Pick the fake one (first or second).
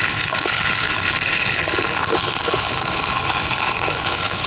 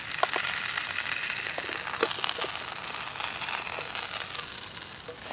first